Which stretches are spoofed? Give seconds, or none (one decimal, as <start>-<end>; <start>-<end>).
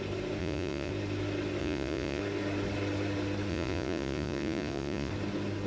0.4-0.9; 1.6-2.2; 3.5-5.1